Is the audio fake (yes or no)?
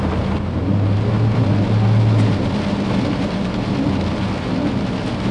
no